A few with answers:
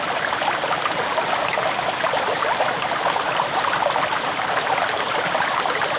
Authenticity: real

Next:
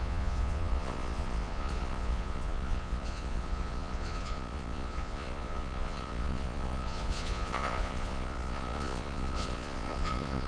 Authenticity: fake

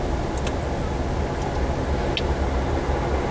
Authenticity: real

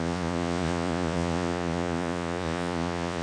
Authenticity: fake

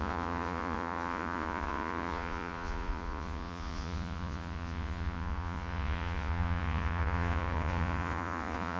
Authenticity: fake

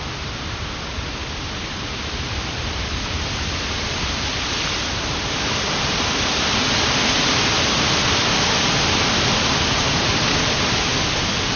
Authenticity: real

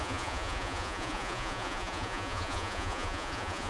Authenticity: fake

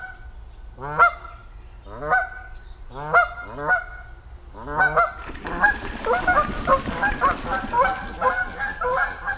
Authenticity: real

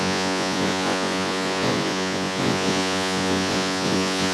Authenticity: fake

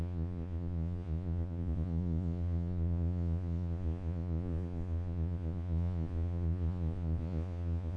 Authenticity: fake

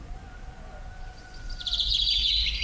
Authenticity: fake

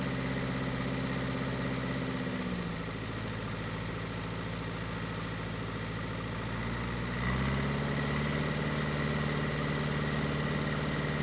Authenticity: real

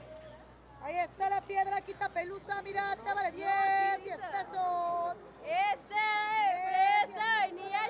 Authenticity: real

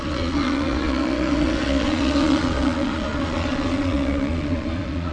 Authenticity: fake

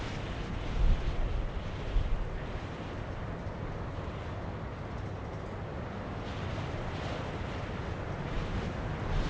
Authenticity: real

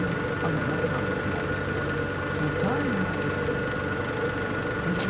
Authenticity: real